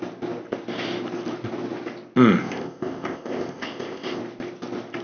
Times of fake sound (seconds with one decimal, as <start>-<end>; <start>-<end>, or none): 2.4-4.2